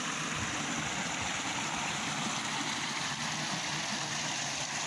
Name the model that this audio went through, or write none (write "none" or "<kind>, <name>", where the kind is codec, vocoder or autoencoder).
none